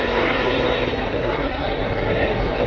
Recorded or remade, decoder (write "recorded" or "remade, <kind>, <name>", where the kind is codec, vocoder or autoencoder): remade, codec, SNAC